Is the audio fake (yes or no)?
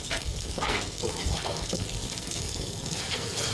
yes